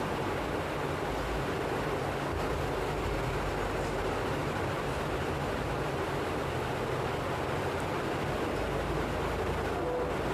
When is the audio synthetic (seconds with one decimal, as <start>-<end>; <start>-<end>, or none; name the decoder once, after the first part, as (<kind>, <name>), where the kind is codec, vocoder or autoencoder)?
none